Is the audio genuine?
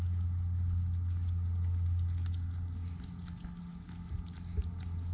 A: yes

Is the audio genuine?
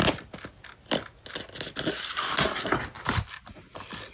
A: yes